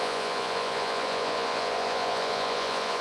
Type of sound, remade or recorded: remade